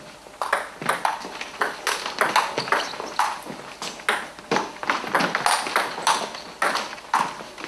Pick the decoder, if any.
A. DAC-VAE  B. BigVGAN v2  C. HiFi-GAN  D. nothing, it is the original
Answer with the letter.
D